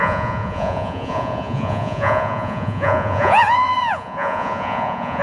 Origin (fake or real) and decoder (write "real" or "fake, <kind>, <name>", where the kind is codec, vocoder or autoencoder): fake, vocoder, Vocos